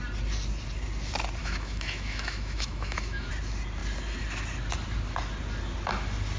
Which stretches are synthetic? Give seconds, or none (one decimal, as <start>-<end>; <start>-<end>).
1.4-3.3